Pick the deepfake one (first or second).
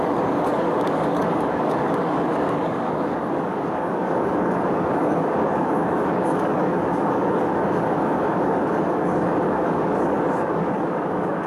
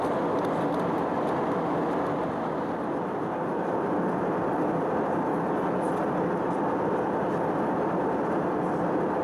first